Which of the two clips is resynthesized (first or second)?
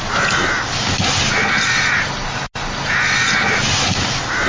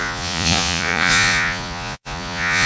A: second